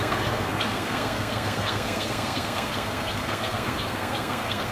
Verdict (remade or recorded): remade